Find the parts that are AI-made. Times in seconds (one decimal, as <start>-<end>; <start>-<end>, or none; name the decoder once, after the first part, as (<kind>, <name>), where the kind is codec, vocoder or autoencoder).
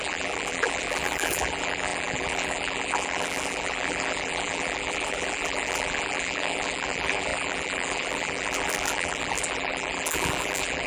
0.0-10.9 (vocoder, BigVGAN v2)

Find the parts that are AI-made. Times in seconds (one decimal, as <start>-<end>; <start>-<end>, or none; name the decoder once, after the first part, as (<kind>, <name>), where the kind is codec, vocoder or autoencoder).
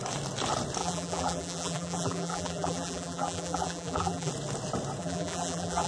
0.8-4.3 (vocoder, BigVGAN v2); 5.0-5.9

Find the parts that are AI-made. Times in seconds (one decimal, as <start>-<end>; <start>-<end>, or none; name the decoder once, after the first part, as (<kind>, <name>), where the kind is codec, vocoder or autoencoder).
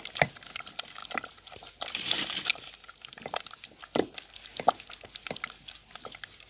5.8-6.5 (vocoder, BigVGAN v2)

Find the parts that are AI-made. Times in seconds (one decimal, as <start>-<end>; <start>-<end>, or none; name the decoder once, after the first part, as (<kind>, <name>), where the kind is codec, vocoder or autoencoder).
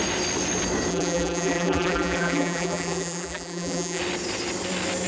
0.9-4.0 (vocoder, BigVGAN v2)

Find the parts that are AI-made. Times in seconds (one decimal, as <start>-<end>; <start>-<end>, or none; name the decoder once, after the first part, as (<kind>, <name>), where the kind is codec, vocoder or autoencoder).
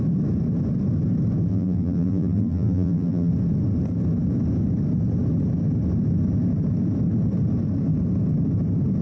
1.5-3.3 (vocoder, BigVGAN v2)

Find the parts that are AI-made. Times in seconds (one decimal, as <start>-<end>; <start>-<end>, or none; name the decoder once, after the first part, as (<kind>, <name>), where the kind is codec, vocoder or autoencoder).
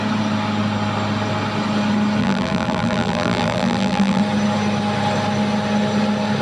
2.2-4.2 (vocoder, BigVGAN v2)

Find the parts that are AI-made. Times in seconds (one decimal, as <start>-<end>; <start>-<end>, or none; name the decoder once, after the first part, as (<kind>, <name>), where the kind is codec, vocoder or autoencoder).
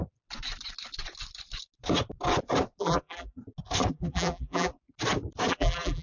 2.8-3.4 (vocoder, BigVGAN v2); 3.9-4.7; 5.5-6.0